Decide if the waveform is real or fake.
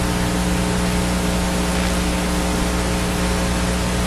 real